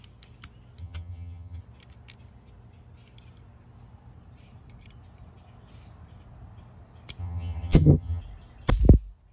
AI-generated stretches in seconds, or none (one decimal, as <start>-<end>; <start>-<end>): 0.8-1.6; 7.2-8.2